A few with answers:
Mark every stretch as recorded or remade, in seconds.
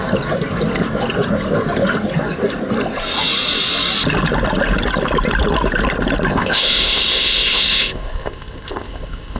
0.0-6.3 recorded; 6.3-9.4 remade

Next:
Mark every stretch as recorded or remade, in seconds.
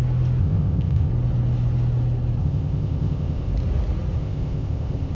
0.0-0.4 recorded; 0.4-1.1 remade; 1.1-2.4 recorded; 2.4-3.5 remade; 3.5-4.2 recorded; 4.2-5.1 remade